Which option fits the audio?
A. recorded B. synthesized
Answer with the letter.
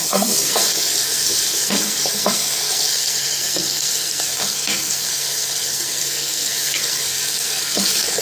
B